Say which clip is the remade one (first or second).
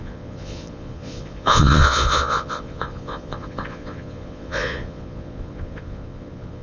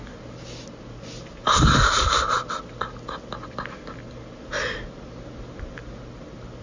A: first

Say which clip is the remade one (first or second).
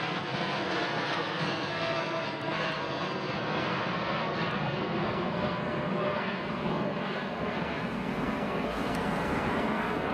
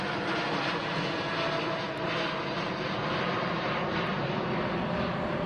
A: first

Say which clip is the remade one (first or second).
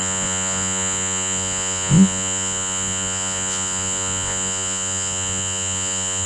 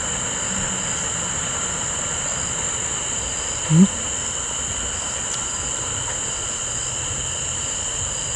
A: first